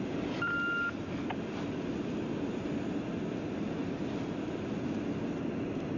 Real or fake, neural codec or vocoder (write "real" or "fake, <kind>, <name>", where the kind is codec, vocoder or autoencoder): real